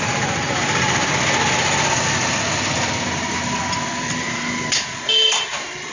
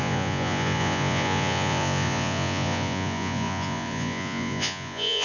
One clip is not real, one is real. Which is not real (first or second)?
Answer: second